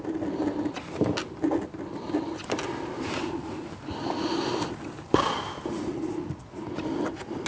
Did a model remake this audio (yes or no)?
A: no